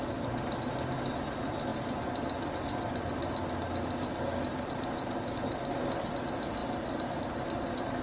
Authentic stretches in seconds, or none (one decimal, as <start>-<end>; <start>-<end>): 0.0-6.6; 7.2-8.0